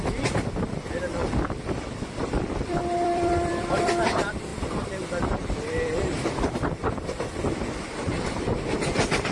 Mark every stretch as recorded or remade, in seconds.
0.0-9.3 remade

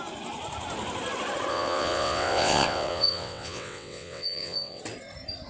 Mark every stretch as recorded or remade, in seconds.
0.0-1.5 recorded; 1.5-4.8 remade; 4.8-5.5 recorded

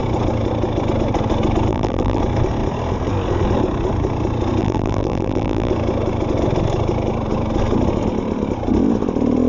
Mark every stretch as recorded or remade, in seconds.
0.0-1.7 recorded; 1.7-2.2 remade; 2.2-4.6 recorded; 4.6-5.7 remade; 5.7-9.5 recorded

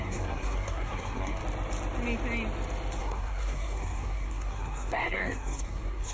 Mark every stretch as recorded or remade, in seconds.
0.0-1.4 remade; 1.4-3.0 recorded; 3.0-6.1 remade

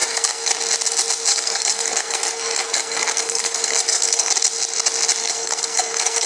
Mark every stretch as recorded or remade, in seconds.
0.0-0.5 remade; 0.5-1.3 recorded; 1.3-4.3 remade; 4.3-5.2 recorded; 5.2-6.3 remade

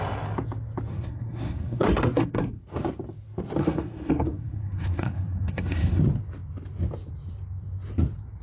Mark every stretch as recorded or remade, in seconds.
0.0-0.9 recorded; 0.9-2.6 remade; 2.6-3.6 recorded; 3.6-6.0 remade; 6.0-8.4 recorded